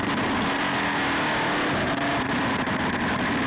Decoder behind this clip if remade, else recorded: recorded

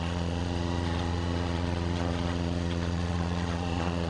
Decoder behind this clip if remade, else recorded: remade, vocoder, Vocos